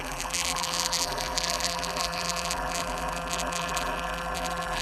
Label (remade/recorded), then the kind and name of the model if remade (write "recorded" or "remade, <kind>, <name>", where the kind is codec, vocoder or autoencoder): remade, vocoder, BigVGAN v2